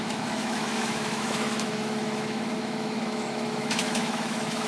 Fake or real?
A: fake